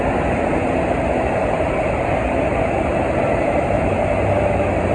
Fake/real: fake